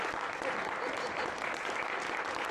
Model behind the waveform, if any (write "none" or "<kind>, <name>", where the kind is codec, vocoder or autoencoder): none